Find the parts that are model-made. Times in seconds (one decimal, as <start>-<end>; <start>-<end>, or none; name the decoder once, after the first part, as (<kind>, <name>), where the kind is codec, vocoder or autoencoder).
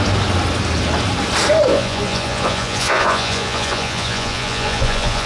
1.7-5.3 (vocoder, Vocos)